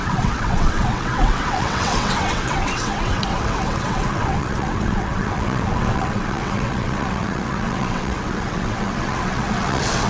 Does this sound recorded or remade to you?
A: remade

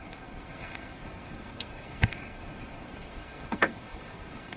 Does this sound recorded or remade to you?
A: remade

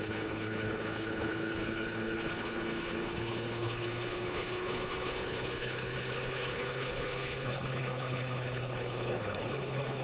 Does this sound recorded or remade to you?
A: remade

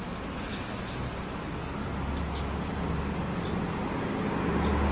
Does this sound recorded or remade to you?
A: recorded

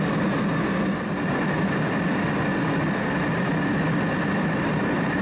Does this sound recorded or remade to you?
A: recorded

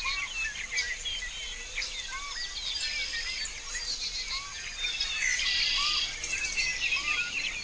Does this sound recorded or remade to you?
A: recorded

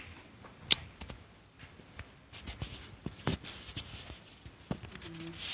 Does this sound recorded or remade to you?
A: recorded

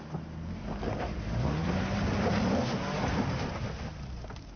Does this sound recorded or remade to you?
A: recorded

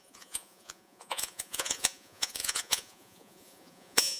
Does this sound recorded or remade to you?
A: remade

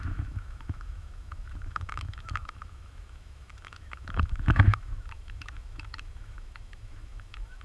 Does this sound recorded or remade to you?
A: remade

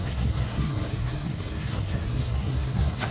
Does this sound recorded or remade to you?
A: remade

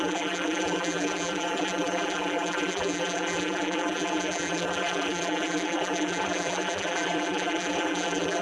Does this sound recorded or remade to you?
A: remade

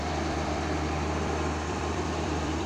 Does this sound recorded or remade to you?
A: remade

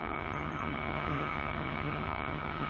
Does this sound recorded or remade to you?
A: remade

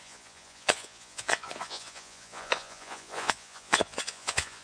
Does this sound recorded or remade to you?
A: remade